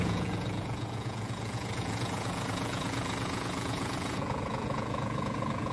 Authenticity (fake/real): fake